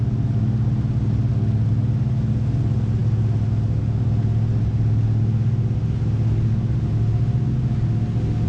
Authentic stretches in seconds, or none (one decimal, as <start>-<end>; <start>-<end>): 0.0-8.5

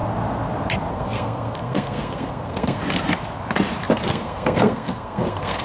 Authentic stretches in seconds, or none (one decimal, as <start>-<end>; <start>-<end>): 0.0-0.9; 2.8-4.1

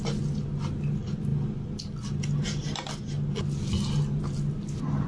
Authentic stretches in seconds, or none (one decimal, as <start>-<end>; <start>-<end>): 0.0-5.1